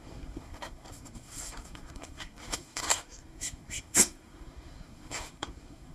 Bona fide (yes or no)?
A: no